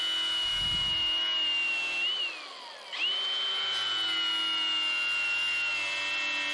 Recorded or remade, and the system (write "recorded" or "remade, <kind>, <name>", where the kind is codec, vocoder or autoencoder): recorded